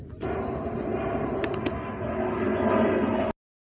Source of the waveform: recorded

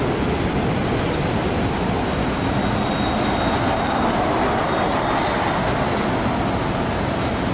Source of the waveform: recorded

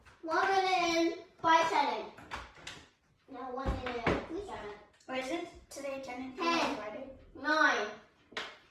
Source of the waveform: recorded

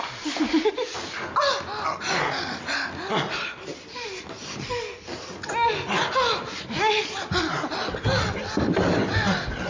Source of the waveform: recorded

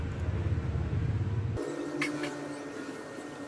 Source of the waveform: remade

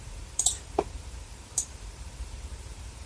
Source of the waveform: remade